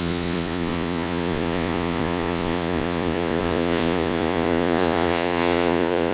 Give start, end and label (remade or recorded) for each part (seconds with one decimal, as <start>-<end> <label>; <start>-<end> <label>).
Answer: 0.0-6.1 remade